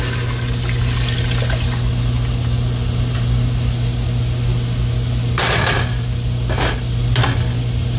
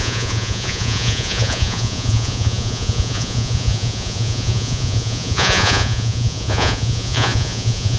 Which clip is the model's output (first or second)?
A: second